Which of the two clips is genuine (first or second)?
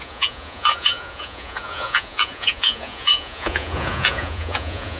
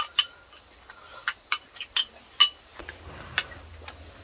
second